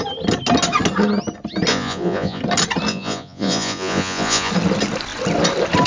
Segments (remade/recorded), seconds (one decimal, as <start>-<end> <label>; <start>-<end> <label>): 0.0-1.7 recorded; 1.7-2.4 remade; 2.4-2.9 recorded; 2.9-4.5 remade; 4.5-5.9 recorded